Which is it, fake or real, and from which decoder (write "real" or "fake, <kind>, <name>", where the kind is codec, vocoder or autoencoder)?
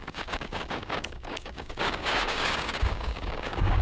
fake, codec, DAC